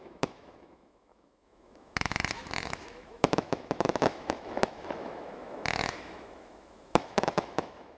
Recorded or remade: remade